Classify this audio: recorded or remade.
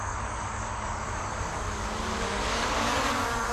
remade